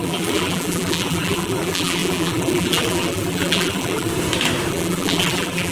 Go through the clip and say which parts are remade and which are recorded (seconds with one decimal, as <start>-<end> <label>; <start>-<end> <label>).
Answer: 0.0-4.1 remade; 4.1-4.7 recorded; 4.7-5.7 remade